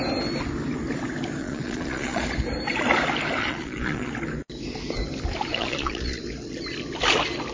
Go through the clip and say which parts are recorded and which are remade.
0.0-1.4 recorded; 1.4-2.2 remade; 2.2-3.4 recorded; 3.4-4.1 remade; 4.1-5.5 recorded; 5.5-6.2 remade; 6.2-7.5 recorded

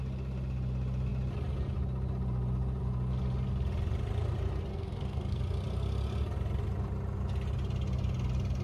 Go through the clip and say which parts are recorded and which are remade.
0.0-4.7 recorded; 4.7-5.4 remade; 5.4-8.6 recorded

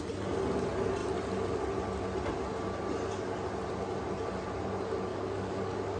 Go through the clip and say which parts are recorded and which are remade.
0.0-5.1 recorded; 5.1-6.0 remade

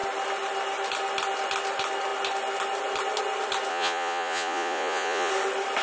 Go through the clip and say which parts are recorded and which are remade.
0.0-3.7 recorded; 3.7-5.3 remade; 5.3-5.8 recorded

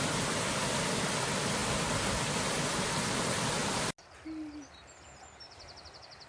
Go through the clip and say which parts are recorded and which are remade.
0.0-6.3 recorded

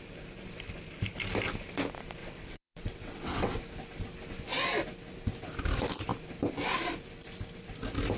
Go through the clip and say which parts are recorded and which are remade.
0.0-2.2 recorded; 2.2-3.6 remade; 3.6-8.2 recorded